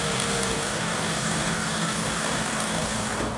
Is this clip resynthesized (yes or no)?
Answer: yes